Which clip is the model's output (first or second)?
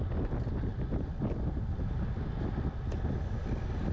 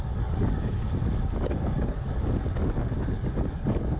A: second